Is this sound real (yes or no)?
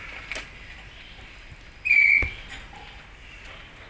yes